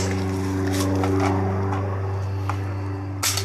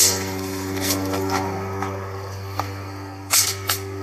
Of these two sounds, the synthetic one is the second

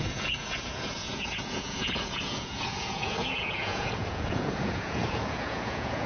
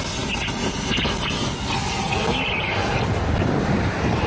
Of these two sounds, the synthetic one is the first